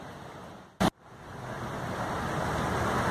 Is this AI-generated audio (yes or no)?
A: no